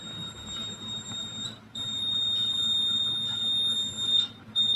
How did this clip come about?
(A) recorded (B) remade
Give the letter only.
B